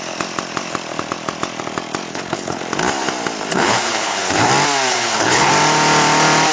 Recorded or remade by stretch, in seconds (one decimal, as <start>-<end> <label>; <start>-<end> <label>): 0.0-2.1 recorded; 2.1-2.6 remade; 2.6-3.5 recorded; 3.5-4.5 remade; 4.5-4.9 recorded; 4.9-5.5 remade; 5.5-6.5 recorded